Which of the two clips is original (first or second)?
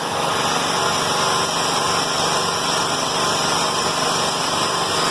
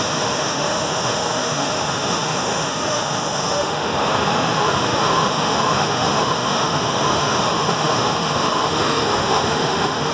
first